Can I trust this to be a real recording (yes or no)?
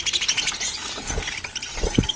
yes